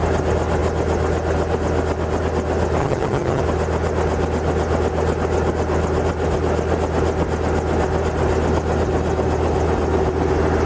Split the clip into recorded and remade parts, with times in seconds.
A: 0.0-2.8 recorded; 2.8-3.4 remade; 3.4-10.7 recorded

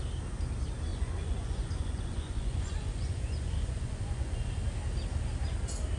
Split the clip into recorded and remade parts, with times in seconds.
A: 0.0-0.9 recorded; 0.9-4.5 remade; 4.5-6.0 recorded

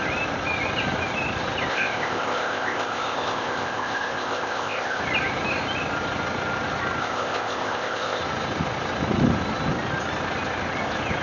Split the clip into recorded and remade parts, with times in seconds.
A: 0.0-1.7 recorded; 1.7-5.0 remade; 5.0-7.0 recorded; 7.0-8.2 remade; 8.2-11.2 recorded

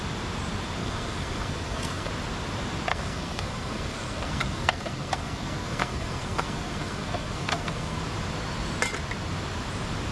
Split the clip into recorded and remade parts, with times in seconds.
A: 0.0-0.8 recorded; 0.8-2.1 remade; 2.1-2.9 recorded; 2.9-8.0 remade; 8.0-10.1 recorded

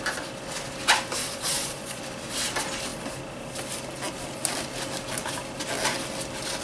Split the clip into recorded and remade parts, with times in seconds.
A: 0.0-1.2 recorded; 1.2-2.0 remade; 2.0-6.6 recorded

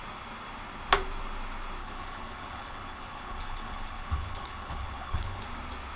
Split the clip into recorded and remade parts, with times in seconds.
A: 0.0-1.8 recorded; 1.8-5.4 remade; 5.4-6.0 recorded